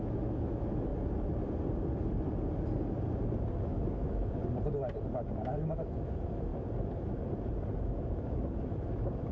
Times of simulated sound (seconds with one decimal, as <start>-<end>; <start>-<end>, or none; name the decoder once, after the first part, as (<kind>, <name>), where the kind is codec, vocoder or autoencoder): 0.0-0.9 (autoencoder, DAC-VAE); 3.6-4.4; 5.4-6.5; 7.8-9.3